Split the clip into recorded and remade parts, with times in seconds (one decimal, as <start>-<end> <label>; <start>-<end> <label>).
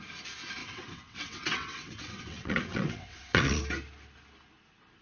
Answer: 0.0-0.6 recorded; 0.6-3.6 remade; 3.6-5.0 recorded